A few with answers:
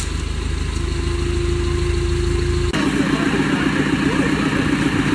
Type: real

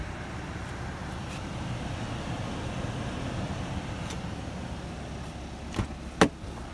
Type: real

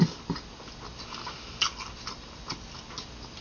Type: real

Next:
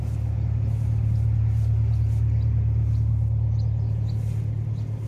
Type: real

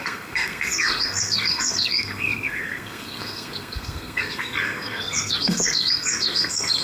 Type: fake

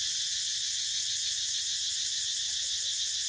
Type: real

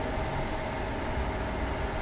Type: real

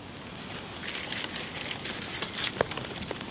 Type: real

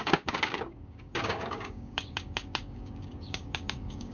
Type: fake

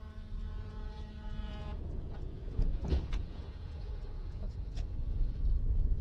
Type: fake